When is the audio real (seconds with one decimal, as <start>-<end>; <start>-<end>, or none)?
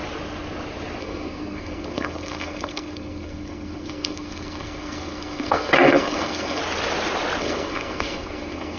0.0-1.0; 6.6-7.4